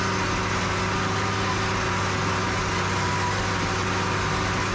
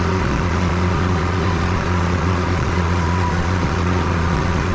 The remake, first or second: second